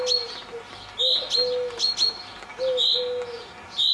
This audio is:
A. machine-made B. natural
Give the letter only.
B